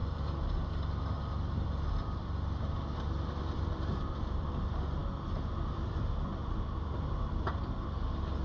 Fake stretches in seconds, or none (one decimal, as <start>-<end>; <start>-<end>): 0.0-8.4